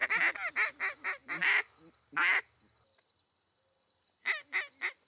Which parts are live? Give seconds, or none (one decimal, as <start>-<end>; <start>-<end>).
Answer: 0.0-5.1